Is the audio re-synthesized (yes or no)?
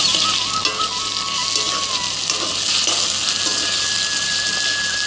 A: no